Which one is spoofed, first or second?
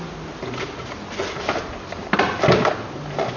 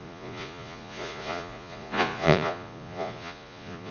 second